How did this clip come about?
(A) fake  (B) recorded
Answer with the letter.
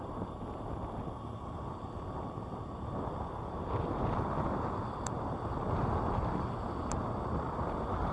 B